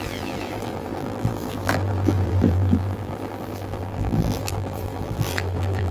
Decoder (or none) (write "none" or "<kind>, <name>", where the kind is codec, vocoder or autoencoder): vocoder, BigVGAN v2